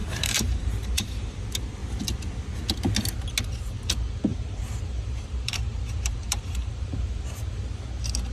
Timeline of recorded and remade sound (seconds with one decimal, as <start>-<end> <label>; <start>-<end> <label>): 0.0-1.4 remade; 1.4-4.3 recorded; 4.3-7.6 remade; 7.6-8.3 recorded